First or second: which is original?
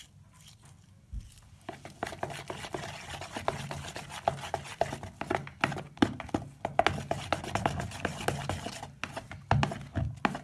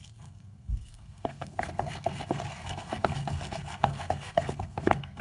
first